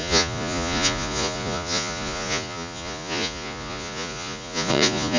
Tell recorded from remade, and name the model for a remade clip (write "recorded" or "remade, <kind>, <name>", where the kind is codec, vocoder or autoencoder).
remade, vocoder, Vocos